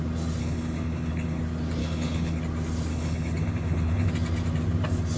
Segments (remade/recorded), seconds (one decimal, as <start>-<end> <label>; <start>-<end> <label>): 0.0-0.4 recorded; 0.4-1.4 remade; 1.4-1.8 recorded; 1.8-2.4 remade; 2.4-2.9 recorded; 2.9-4.1 remade; 4.1-5.2 recorded